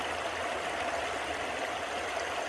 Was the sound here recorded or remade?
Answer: recorded